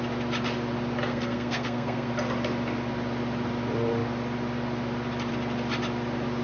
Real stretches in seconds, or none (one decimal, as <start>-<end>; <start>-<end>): 0.0-1.1; 2.1-6.4